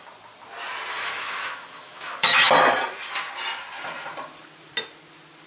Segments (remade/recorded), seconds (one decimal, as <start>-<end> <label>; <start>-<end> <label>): 0.0-0.9 recorded; 0.9-2.5 remade; 2.5-5.5 recorded